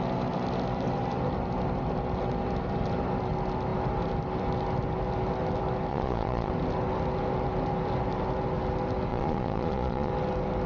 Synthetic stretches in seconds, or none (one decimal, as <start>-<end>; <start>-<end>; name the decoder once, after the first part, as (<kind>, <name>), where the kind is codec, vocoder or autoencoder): 5.9-6.5 (vocoder, Vocos); 9.1-10.1